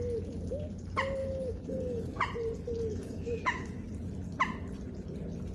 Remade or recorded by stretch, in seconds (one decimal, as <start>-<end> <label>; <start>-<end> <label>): 0.0-1.2 recorded; 1.2-2.0 remade; 2.0-2.9 recorded; 2.9-3.8 remade; 3.8-5.5 recorded

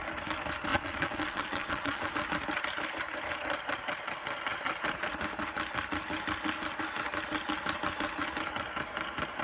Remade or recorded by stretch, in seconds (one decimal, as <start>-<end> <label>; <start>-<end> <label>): 0.0-0.7 recorded; 0.7-2.1 remade; 2.1-9.4 recorded

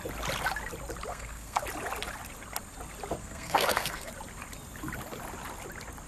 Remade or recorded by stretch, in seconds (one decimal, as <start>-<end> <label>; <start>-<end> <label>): 0.0-1.1 recorded; 1.1-1.6 remade; 1.6-3.2 recorded; 3.2-4.1 remade; 4.1-6.1 recorded

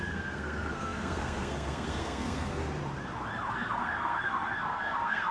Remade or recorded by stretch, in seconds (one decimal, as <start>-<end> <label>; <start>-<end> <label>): 0.0-2.6 remade; 2.6-3.5 recorded; 3.5-5.3 remade

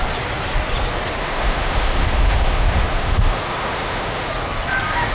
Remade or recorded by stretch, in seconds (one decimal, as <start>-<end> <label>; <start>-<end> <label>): 0.0-1.2 recorded; 1.2-4.3 remade; 4.3-5.1 recorded

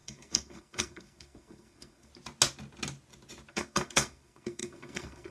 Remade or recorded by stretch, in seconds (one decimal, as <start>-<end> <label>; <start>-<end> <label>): 0.0-2.1 remade; 2.1-3.5 recorded; 3.5-5.3 remade

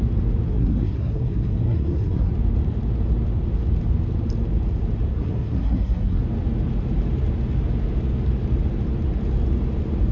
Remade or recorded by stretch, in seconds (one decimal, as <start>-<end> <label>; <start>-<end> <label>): 0.0-0.5 recorded; 0.5-2.3 remade; 2.3-5.1 recorded; 5.1-6.2 remade; 6.2-10.1 recorded

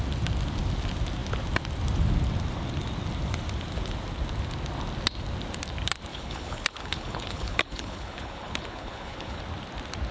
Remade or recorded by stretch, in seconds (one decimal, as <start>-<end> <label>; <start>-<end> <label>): 0.0-6.1 recorded; 6.1-9.4 remade; 9.4-10.1 recorded